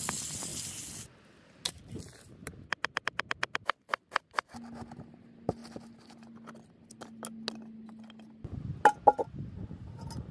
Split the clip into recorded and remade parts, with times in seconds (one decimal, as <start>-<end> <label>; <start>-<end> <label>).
0.0-10.3 recorded